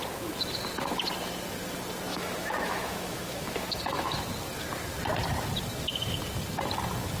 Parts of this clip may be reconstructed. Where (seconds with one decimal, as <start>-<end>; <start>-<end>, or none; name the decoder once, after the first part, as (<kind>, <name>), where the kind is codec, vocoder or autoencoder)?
2.1-4.2 (autoencoder, DAC-VAE)